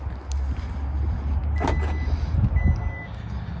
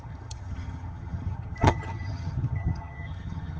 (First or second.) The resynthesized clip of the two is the second